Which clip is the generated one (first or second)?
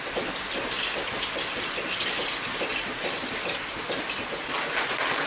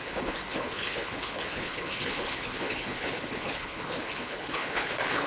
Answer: second